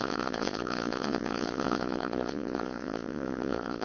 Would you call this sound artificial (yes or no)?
yes